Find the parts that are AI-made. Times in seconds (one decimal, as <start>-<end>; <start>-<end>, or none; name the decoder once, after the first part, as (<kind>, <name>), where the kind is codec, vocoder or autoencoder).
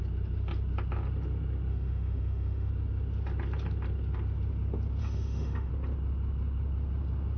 1.7-2.7 (autoencoder, DAC-VAE); 5.0-5.7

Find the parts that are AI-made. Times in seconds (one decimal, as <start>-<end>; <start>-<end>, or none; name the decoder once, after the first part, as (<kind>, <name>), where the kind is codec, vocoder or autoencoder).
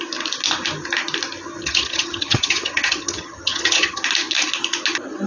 1.6-4.0 (vocoder, HiFi-GAN)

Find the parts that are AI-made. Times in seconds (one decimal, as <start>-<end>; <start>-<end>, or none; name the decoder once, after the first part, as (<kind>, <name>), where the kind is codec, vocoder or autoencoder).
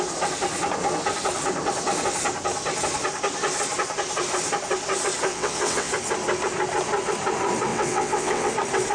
5.3-5.9 (vocoder, WaveNeXt); 7.7-8.5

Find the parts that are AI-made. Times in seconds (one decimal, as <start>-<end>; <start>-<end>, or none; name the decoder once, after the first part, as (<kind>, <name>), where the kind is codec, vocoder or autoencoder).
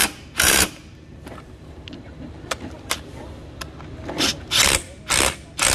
0.0-2.8 (vocoder, BigVGAN v2)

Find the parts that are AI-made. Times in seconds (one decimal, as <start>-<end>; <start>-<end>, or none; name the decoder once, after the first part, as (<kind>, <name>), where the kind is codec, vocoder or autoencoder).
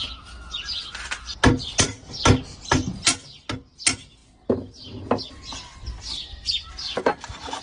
none